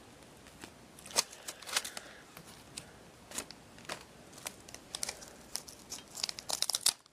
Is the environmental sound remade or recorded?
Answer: recorded